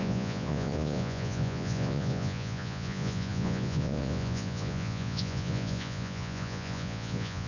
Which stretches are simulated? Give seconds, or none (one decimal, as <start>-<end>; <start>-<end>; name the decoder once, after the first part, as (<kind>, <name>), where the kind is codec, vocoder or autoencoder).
0.0-7.5 (vocoder, Vocos)